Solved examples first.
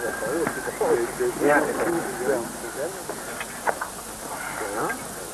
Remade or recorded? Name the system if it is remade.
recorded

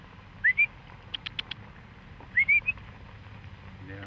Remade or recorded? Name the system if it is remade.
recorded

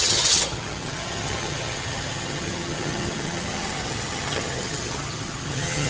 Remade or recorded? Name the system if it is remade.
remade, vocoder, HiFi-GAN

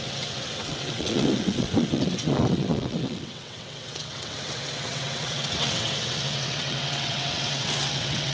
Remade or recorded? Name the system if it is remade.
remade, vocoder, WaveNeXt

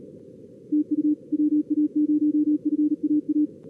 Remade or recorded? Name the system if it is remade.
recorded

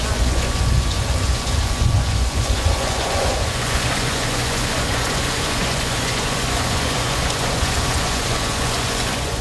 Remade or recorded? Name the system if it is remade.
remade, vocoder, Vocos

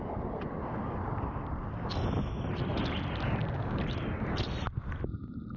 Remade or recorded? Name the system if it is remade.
recorded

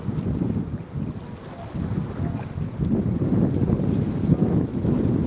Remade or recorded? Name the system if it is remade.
recorded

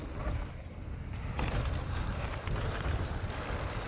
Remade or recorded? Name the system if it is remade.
recorded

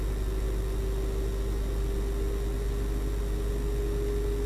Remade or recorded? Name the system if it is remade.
recorded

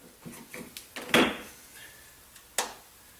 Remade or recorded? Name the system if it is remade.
recorded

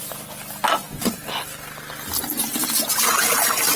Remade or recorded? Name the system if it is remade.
recorded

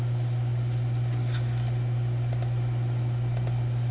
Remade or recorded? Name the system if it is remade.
recorded